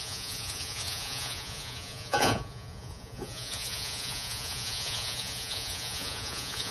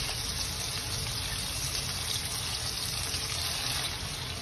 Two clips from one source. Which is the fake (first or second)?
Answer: first